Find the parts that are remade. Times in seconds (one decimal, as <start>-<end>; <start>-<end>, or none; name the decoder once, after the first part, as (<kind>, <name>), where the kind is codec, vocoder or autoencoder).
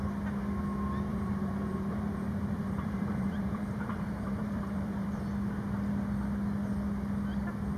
1.1-5.2 (vocoder, BigVGAN v2)